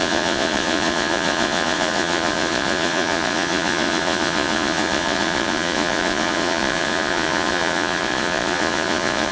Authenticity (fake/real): fake